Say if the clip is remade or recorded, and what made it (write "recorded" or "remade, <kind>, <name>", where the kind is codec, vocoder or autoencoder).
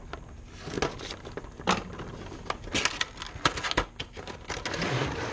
recorded